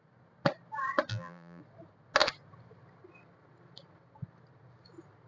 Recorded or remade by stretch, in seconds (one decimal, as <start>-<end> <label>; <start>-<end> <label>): 0.0-1.1 recorded; 1.1-1.6 remade; 1.6-5.3 recorded